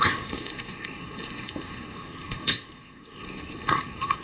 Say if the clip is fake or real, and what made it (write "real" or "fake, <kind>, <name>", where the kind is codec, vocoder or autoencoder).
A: fake, codec, SNAC